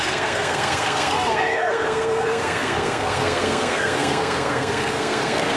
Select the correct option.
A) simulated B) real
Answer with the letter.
A